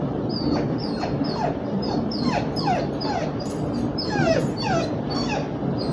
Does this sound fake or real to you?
fake